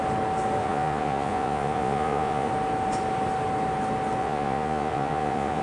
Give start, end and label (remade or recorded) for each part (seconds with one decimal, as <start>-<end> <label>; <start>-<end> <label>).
0.0-0.6 recorded; 0.6-2.5 remade; 2.5-4.2 recorded; 4.2-5.6 remade